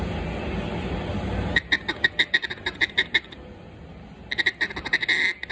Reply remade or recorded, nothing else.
recorded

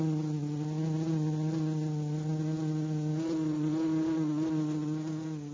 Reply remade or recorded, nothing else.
recorded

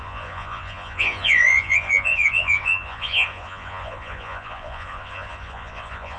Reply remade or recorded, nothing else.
remade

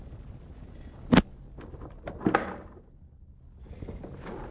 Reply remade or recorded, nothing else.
recorded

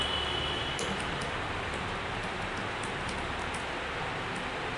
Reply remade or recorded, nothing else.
recorded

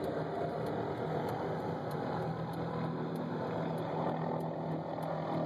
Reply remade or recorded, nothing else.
recorded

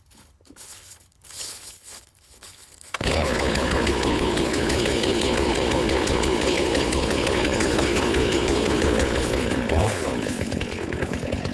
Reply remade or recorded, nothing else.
remade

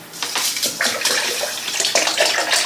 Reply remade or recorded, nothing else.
recorded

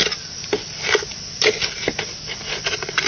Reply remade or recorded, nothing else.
recorded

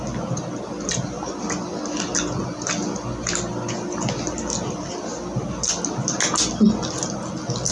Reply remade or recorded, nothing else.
recorded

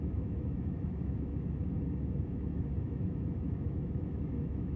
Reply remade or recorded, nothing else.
remade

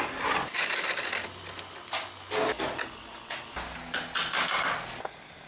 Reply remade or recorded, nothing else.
recorded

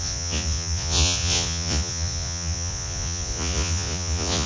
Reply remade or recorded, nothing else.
remade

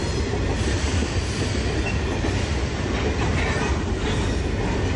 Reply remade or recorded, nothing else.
recorded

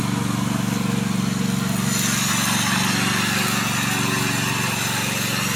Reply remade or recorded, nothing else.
recorded